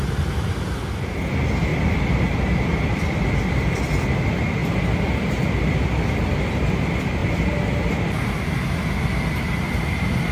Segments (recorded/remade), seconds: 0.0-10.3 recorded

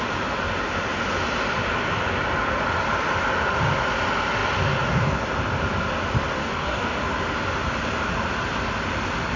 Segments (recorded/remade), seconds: 0.0-6.4 recorded; 6.4-6.9 remade; 6.9-9.4 recorded

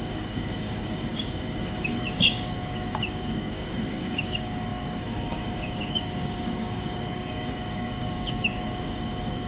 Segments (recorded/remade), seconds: 0.0-9.5 remade

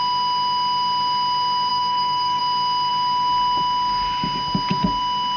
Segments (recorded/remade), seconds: 0.0-1.7 recorded; 1.7-2.4 remade; 2.4-5.4 recorded

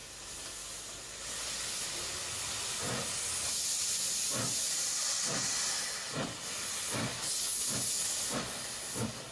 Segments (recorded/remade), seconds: 0.0-9.3 recorded